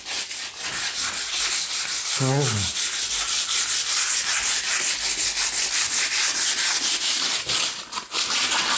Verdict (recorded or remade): recorded